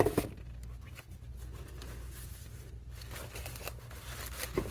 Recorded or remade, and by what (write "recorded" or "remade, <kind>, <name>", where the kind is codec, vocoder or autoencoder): recorded